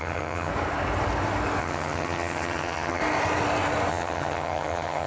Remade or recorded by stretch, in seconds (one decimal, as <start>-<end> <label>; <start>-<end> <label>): 0.0-0.5 remade; 0.5-1.6 recorded; 1.6-3.0 remade; 3.0-3.9 recorded; 3.9-5.1 remade